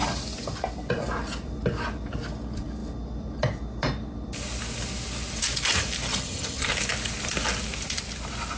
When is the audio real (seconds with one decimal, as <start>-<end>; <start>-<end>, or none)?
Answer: 0.0-6.1; 6.7-8.6